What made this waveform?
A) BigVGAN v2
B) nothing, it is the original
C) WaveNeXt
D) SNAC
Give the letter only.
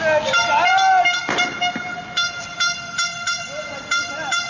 B